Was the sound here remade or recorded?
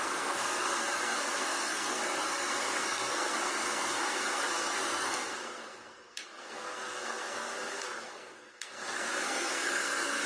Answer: remade